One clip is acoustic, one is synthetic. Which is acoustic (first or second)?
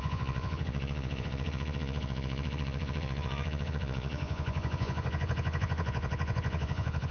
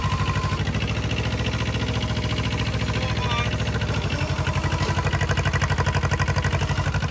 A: second